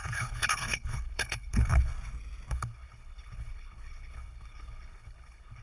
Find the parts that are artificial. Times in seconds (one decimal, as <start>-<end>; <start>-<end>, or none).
0.0-1.9; 2.5-5.6